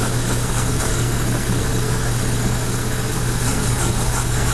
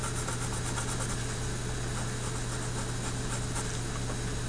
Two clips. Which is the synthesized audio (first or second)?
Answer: first